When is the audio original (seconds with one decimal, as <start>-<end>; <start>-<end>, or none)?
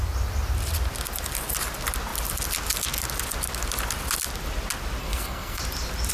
0.0-5.0; 5.6-6.1